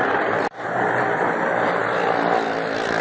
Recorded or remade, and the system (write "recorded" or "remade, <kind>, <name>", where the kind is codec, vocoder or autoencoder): recorded